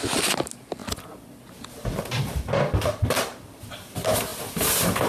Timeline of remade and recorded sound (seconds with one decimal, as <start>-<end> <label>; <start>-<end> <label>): 0.0-5.1 recorded